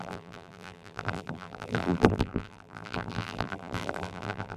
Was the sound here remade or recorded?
remade